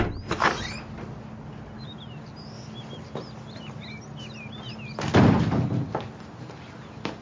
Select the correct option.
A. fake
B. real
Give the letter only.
B